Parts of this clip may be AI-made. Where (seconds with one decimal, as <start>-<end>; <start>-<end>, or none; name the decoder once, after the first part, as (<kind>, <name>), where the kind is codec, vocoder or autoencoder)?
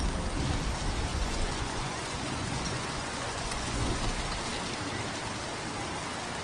1.1-4.0 (vocoder, Vocos)